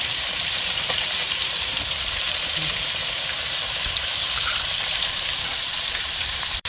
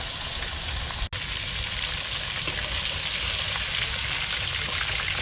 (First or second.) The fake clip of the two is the first